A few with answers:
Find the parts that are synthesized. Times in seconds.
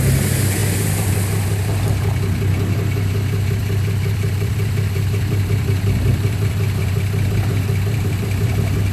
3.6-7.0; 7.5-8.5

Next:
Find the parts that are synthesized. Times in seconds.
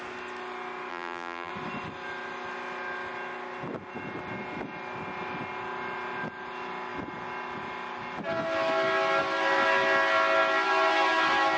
0.9-1.5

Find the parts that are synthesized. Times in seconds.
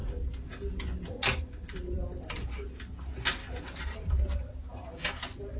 none